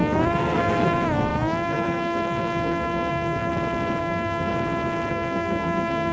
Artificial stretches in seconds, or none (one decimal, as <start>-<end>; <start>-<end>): 0.0-3.5; 4.0-4.5; 5.1-6.1